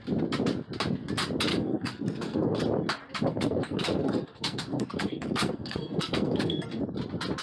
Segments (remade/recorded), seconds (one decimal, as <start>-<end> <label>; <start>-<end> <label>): 0.0-1.5 recorded; 1.5-2.6 remade; 2.6-3.3 recorded; 3.3-6.8 remade; 6.8-7.4 recorded